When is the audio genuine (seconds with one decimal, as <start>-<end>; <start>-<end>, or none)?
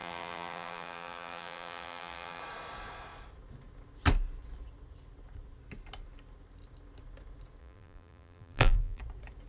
2.4-7.6; 9.0-9.5